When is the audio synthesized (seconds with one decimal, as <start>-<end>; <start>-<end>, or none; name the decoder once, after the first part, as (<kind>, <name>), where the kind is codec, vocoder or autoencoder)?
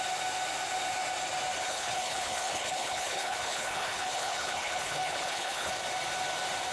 1.7-5.7 (codec, HILCodec)